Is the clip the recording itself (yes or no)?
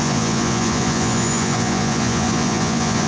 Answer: no